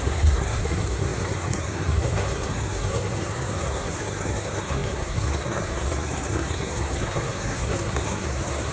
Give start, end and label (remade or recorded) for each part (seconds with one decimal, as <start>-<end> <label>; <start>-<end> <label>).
0.0-8.7 remade